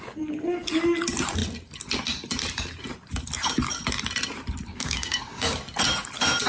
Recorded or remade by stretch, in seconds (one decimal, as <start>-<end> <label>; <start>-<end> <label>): 0.0-4.7 recorded; 4.7-5.6 remade; 5.6-6.5 recorded